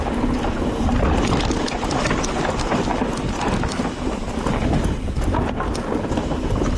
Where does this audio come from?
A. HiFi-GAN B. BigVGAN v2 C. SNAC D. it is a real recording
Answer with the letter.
D